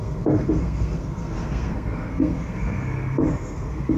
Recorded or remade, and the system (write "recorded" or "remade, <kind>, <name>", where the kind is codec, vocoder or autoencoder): remade, codec, SNAC